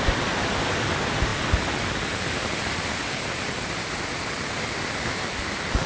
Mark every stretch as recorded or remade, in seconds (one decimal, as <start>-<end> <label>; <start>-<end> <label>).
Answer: 0.0-5.9 recorded